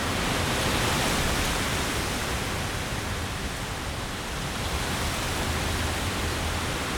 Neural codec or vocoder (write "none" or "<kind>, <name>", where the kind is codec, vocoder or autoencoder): none